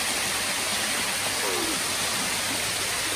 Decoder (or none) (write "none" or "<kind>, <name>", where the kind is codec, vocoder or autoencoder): none